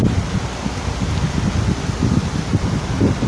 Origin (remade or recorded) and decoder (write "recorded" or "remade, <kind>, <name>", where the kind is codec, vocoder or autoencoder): recorded